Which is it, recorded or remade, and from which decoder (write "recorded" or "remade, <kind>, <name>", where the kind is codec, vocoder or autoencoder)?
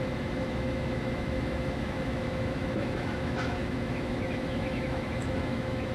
remade, autoencoder, DAC-VAE